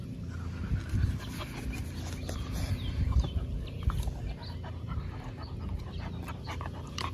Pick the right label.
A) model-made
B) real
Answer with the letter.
B